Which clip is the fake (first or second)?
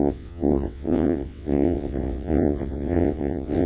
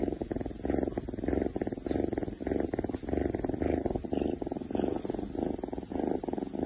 first